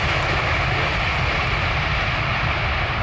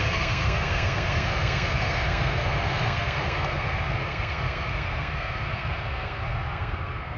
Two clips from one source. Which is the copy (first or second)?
second